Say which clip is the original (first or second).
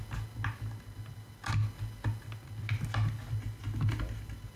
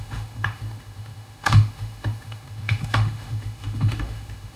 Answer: first